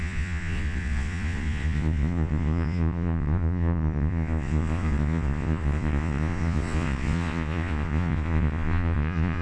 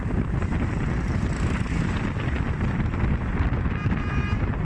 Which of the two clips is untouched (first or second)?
second